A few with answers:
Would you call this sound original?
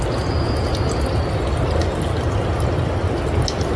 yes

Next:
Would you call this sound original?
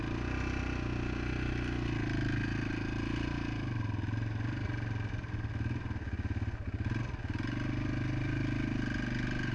yes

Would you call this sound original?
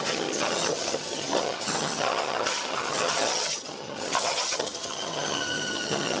no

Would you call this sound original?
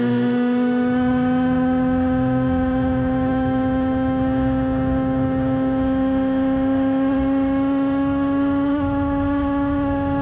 no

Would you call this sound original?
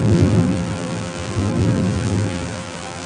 no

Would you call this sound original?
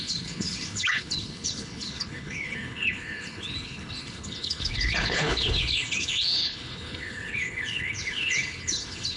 no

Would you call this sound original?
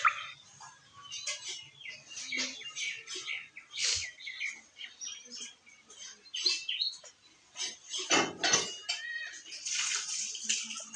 yes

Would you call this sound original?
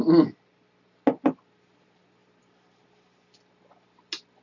yes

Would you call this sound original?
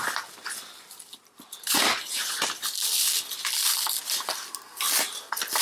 yes